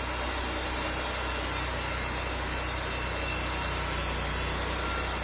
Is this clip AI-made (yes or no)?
no